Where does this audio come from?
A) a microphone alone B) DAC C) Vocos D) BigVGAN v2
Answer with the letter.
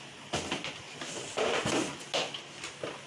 A